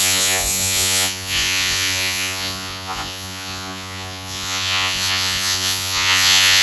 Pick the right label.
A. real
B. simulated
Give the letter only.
B